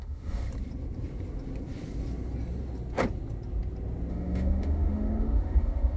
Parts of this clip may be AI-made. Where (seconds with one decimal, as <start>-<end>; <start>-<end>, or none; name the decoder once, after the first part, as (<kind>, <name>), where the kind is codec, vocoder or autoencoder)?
0.0-0.5 (autoencoder, DAC-VAE); 4.1-6.0